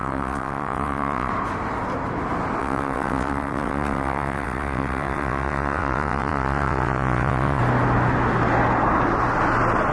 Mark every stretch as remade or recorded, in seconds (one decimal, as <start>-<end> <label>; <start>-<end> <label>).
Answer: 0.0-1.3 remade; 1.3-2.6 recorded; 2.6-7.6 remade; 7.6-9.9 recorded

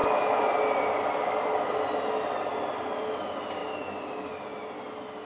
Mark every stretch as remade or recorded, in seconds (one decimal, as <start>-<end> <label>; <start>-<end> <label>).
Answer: 0.0-5.3 recorded

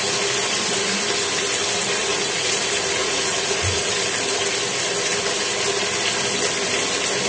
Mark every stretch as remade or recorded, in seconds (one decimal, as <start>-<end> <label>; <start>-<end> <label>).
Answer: 0.0-2.0 recorded; 2.0-2.6 remade; 2.6-3.0 recorded; 3.0-3.9 remade; 3.9-7.3 recorded

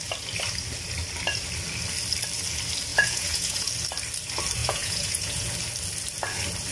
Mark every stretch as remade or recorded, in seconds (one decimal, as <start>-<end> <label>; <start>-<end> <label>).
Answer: 0.0-2.9 recorded; 2.9-3.7 remade; 3.7-4.6 recorded; 4.6-5.5 remade; 5.5-6.7 recorded

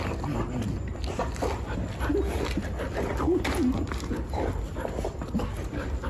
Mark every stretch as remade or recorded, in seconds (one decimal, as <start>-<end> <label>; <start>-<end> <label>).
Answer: 0.0-6.1 recorded